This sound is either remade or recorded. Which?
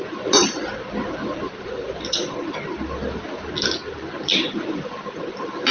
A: recorded